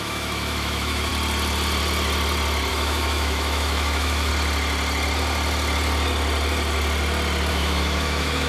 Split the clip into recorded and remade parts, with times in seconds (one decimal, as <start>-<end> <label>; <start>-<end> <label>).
0.0-1.1 remade; 1.1-2.7 recorded; 2.7-4.3 remade; 4.3-7.5 recorded; 7.5-8.5 remade